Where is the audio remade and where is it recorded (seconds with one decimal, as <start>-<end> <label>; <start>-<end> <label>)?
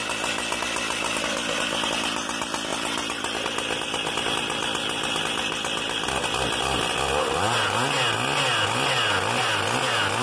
0.0-10.2 recorded